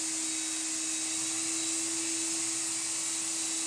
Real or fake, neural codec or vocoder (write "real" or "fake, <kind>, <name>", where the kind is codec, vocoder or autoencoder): real